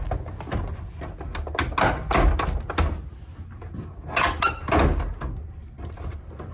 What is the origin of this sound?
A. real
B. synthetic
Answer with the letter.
A